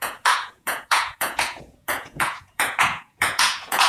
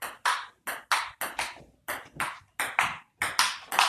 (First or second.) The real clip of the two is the second